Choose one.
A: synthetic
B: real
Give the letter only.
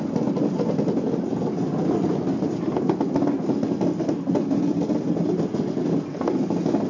B